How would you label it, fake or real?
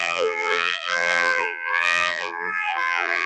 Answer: fake